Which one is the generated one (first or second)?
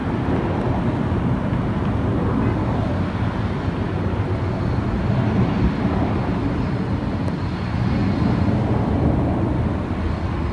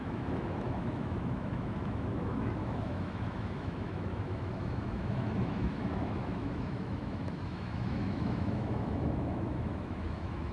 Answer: second